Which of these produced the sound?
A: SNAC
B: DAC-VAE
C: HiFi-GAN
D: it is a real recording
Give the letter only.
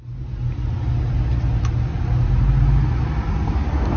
D